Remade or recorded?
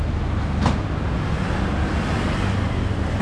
recorded